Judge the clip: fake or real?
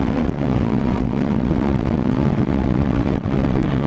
fake